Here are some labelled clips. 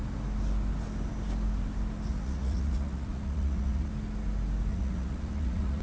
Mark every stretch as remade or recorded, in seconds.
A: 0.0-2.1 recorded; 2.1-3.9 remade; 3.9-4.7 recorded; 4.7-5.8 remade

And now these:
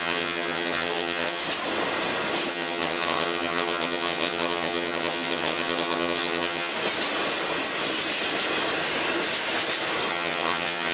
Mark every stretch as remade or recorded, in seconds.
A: 0.0-1.4 remade; 1.4-2.5 recorded; 2.5-6.7 remade; 6.7-10.1 recorded; 10.1-10.9 remade

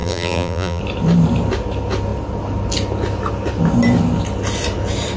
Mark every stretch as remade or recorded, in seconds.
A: 0.0-0.8 remade; 0.8-5.2 recorded

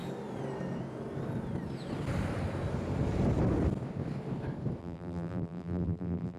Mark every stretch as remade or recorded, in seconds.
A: 0.0-4.8 recorded; 4.8-6.4 remade

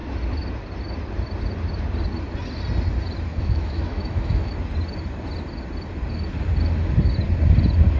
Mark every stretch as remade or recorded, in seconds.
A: 0.0-3.3 recorded; 3.3-4.5 remade; 4.5-8.0 recorded